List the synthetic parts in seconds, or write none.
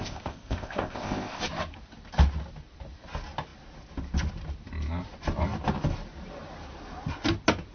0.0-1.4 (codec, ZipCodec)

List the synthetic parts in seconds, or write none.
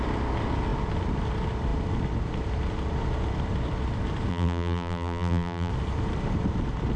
4.3-5.7 (vocoder, BigVGAN v2)